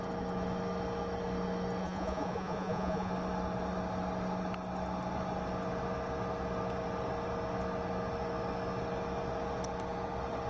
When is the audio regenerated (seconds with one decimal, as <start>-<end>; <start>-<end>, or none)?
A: 1.8-3.1